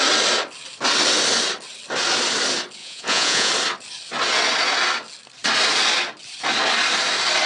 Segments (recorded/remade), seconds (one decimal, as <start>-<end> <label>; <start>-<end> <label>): 0.0-2.8 recorded; 2.8-3.5 remade; 3.5-7.5 recorded